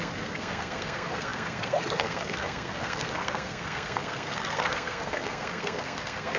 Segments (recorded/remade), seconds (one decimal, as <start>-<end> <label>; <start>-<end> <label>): 0.0-6.4 remade